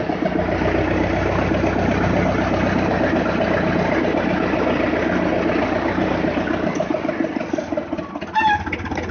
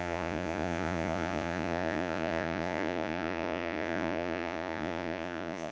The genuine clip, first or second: first